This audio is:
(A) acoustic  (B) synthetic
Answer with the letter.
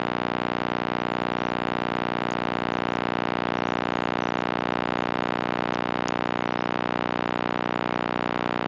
A